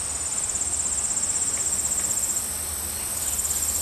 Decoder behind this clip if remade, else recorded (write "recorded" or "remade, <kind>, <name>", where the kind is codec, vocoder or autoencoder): recorded